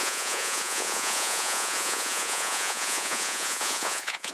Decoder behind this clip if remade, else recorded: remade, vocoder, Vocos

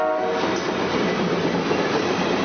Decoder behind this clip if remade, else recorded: recorded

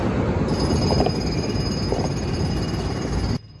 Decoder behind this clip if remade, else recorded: recorded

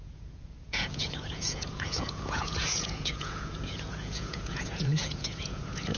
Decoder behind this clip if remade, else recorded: remade, vocoder, Vocos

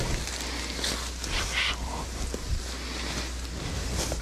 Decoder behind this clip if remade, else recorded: recorded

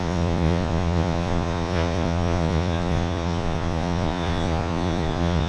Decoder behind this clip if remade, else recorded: remade, vocoder, Vocos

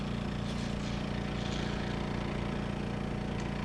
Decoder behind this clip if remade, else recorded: recorded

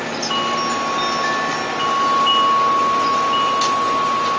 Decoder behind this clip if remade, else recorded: recorded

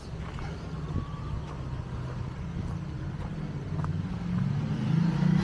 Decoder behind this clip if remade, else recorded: recorded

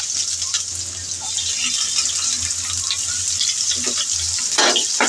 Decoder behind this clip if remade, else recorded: recorded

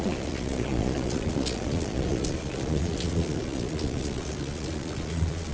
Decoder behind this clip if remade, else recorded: remade, vocoder, Vocos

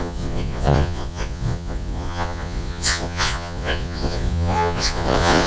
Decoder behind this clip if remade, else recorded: remade, vocoder, Vocos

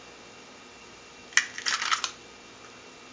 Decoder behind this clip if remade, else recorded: recorded